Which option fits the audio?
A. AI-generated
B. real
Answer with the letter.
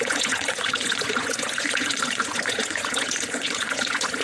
A